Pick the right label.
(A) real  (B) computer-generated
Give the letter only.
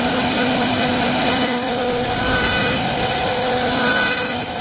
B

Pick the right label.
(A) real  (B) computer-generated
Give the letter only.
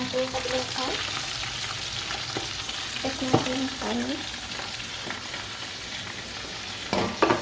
A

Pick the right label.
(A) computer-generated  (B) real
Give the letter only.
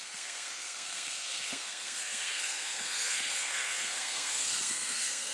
A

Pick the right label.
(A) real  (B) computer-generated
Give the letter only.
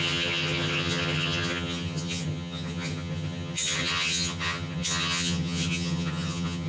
B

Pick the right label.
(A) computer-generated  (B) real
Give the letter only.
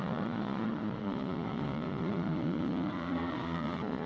A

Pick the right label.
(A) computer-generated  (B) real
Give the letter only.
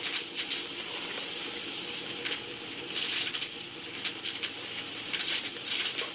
A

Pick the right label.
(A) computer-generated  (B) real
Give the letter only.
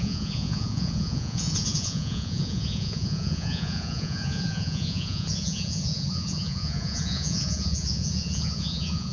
A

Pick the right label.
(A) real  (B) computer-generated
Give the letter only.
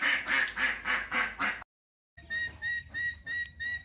A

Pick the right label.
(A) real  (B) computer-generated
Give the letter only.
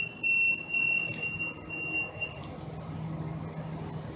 A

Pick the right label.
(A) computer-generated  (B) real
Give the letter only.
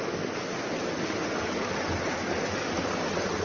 B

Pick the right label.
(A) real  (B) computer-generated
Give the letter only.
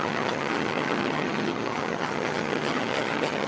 B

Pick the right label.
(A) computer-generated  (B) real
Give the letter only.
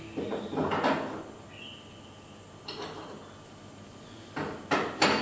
B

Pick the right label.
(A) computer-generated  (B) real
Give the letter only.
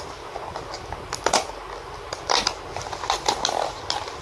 B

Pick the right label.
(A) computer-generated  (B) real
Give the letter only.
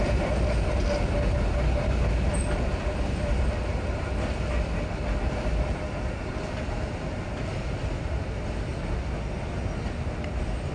B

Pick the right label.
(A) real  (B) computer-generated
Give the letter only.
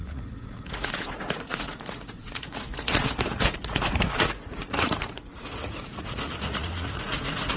B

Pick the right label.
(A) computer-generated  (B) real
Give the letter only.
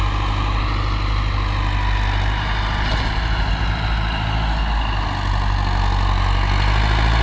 B